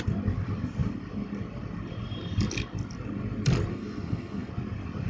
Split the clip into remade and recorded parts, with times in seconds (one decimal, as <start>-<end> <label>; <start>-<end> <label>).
0.0-3.7 recorded; 3.7-4.5 remade; 4.5-5.1 recorded